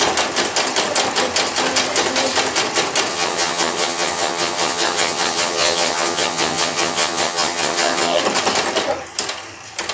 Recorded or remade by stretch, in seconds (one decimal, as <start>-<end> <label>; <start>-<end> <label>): 0.0-3.1 recorded; 3.1-8.2 remade; 8.2-9.9 recorded